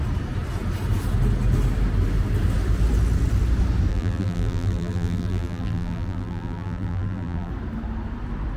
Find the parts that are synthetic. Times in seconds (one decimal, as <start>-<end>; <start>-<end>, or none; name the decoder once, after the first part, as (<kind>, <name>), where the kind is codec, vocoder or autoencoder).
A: 3.9-7.5 (vocoder, BigVGAN v2)